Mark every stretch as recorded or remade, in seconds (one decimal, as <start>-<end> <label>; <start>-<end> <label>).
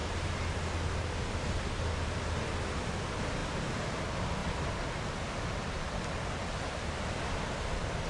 0.0-2.2 remade; 2.2-4.4 recorded; 4.4-7.4 remade; 7.4-8.1 recorded